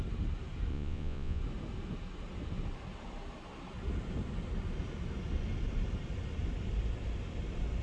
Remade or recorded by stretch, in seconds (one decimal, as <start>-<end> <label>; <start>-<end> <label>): 0.0-0.7 recorded; 0.7-1.4 remade; 1.4-7.8 recorded